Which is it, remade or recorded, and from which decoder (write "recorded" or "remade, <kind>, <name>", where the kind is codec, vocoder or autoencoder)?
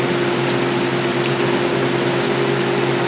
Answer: recorded